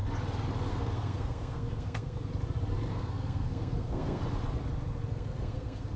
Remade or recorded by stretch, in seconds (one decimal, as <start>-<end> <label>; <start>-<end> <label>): 0.0-0.7 recorded; 0.7-2.3 remade; 2.3-2.9 recorded; 2.9-4.2 remade; 4.2-5.1 recorded; 5.1-6.0 remade